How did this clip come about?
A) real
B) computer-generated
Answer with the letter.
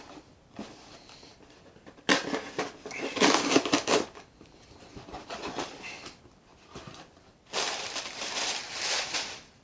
B